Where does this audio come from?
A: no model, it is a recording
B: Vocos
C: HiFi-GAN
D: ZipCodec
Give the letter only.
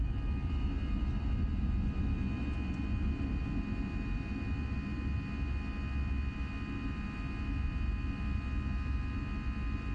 A